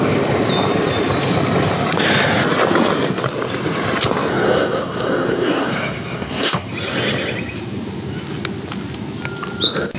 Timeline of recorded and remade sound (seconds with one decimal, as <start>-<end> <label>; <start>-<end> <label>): 0.0-4.3 recorded; 4.3-6.7 remade; 6.7-10.0 recorded